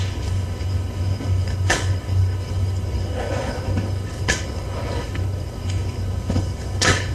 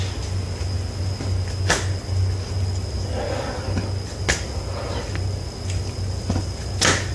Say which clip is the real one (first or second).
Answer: second